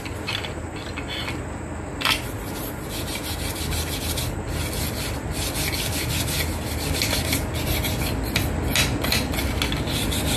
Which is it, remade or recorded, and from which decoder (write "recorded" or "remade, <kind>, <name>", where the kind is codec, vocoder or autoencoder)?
recorded